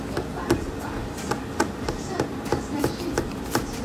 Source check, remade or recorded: remade